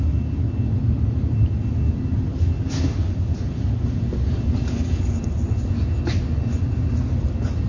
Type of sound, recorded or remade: recorded